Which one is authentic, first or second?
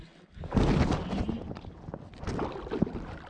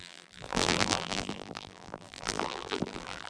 first